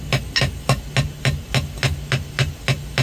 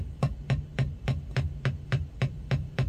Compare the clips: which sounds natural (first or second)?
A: first